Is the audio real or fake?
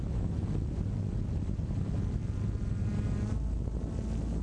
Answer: real